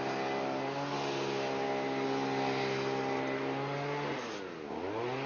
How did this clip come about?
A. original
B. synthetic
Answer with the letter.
A